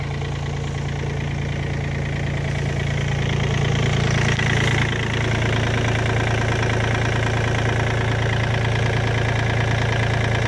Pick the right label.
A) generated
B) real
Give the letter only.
B